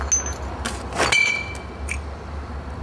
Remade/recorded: recorded